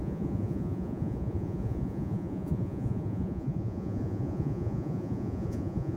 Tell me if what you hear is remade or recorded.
remade